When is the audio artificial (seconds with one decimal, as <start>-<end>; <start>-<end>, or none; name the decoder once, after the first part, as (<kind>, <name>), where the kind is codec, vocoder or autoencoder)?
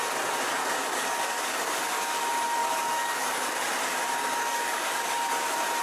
0.6-2.2 (codec, DAC); 2.6-3.6; 4.2-5.3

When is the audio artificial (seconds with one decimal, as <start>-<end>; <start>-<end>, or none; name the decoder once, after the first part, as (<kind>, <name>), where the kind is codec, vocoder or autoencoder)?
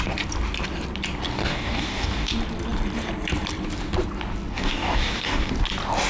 1.4-2.3 (codec, DAC); 4.5-5.5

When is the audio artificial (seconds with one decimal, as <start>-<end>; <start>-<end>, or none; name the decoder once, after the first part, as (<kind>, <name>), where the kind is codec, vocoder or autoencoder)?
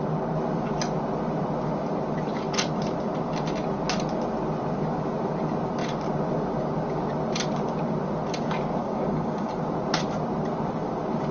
8.8-9.6 (codec, DAC)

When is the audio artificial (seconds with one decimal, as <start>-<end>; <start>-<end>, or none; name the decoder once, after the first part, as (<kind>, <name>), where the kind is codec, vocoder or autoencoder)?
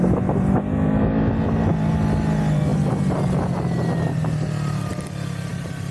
none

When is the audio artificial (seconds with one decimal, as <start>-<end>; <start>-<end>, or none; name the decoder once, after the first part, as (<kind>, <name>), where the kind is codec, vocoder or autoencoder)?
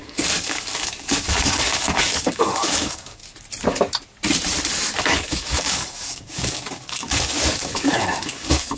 0.0-3.2 (codec, DAC); 5.0-8.8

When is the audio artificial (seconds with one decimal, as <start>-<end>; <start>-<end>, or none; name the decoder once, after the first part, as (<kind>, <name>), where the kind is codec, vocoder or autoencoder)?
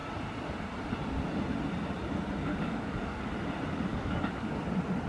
2.5-3.3 (codec, DAC); 3.9-4.6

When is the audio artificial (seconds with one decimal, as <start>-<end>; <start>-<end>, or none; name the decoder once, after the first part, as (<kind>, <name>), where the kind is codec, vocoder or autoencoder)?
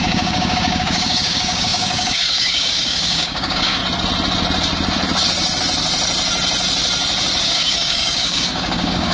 0.0-3.8 (codec, DAC); 7.4-9.1